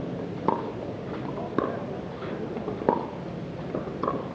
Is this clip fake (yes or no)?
no